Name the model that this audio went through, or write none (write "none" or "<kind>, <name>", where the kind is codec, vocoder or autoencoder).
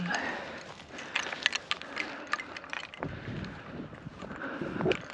none